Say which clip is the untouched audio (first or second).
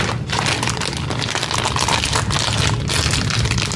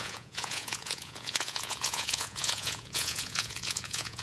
first